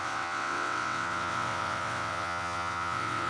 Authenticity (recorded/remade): remade